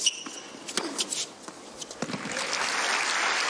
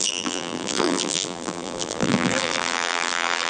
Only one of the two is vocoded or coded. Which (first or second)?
second